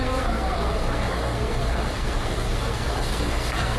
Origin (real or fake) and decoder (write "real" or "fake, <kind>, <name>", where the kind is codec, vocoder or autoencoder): fake, codec, SNAC